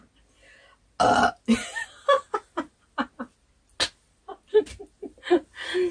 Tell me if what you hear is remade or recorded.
recorded